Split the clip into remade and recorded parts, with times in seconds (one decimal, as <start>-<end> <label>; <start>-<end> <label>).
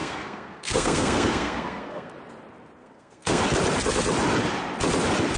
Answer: 0.0-2.1 remade; 2.1-2.8 recorded; 2.8-3.4 remade; 3.4-5.4 recorded